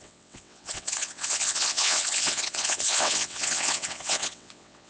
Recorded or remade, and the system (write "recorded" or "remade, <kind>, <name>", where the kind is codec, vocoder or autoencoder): remade, vocoder, WaveNeXt